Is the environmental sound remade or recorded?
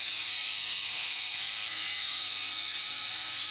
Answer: remade